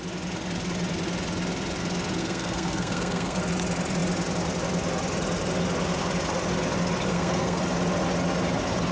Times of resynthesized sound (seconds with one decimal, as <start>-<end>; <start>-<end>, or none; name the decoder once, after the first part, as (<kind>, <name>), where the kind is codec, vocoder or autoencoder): 2.2-3.4 (codec, SNAC); 7.1-7.6